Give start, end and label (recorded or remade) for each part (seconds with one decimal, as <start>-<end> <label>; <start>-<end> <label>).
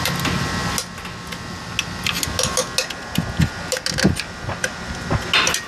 0.0-5.7 recorded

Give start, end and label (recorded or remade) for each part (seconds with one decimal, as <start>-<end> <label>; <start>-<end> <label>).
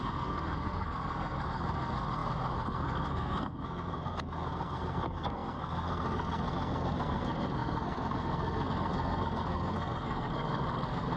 0.0-11.2 remade